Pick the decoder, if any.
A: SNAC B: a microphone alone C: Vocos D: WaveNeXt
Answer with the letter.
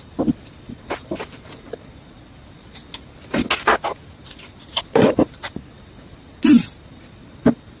B